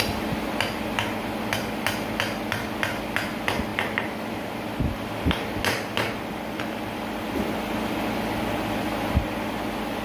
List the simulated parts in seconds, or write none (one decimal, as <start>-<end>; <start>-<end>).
none